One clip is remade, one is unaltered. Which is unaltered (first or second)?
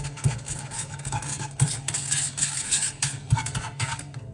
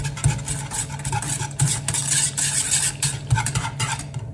second